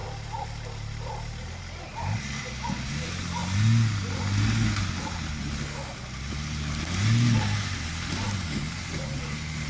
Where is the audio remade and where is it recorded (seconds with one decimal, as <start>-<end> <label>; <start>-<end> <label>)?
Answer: 0.0-9.7 recorded